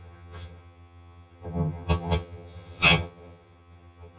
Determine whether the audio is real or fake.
fake